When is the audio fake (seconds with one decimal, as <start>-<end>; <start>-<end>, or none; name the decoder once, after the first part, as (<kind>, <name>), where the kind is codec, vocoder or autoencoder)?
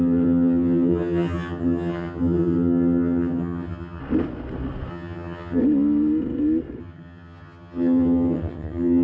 0.0-4.0 (vocoder, HiFi-GAN); 4.9-5.6; 6.8-9.0